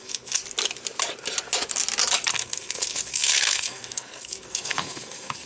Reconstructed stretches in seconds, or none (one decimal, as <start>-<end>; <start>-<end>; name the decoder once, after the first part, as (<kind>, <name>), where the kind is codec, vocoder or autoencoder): 0.0-0.4 (codec, SNAC); 2.3-5.5